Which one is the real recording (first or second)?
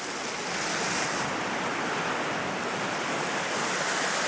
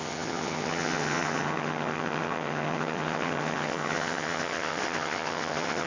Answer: first